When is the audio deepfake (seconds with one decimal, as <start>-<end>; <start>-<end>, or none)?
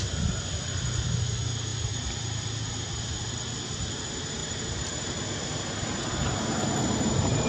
1.7-2.9; 4.4-6.1